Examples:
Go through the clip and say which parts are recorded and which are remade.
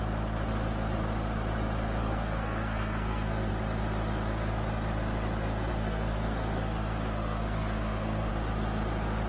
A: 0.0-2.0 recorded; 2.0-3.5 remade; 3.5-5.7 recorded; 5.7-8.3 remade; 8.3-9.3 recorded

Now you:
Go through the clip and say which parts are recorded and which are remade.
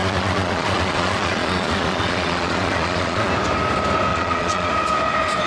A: 0.0-3.3 remade; 3.3-4.1 recorded; 4.1-4.7 remade; 4.7-5.5 recorded